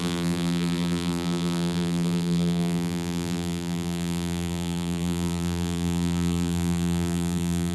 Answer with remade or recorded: remade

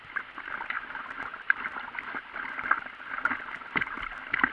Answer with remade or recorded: recorded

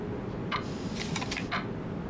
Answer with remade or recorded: recorded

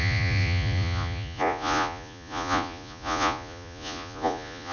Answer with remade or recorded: remade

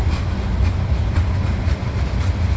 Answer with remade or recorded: recorded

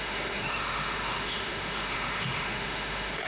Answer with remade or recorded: remade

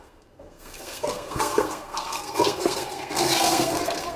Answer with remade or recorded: remade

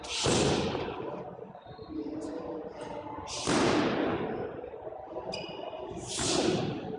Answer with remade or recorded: recorded